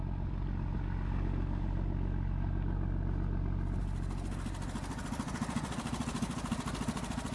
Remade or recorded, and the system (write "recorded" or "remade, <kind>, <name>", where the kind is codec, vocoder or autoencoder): recorded